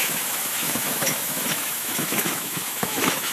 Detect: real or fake fake